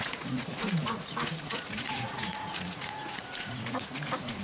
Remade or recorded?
remade